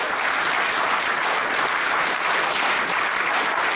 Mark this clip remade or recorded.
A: recorded